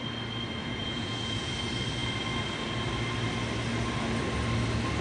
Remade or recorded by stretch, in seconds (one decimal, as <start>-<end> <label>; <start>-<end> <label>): 0.0-0.6 recorded; 0.6-1.5 remade; 1.5-5.0 recorded